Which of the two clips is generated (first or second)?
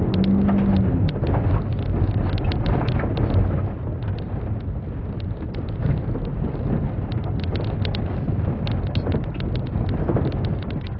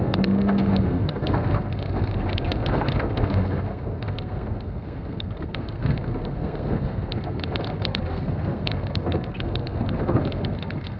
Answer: second